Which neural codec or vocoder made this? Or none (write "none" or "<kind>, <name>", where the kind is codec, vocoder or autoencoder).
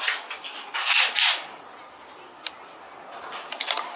none